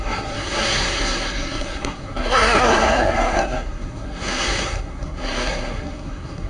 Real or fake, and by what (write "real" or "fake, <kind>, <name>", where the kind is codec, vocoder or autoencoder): fake, codec, SNAC